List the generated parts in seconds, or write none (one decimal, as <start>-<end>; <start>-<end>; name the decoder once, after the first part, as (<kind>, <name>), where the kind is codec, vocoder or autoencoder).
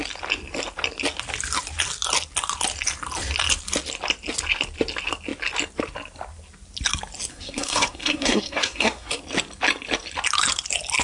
7.3-9.2 (codec, SNAC)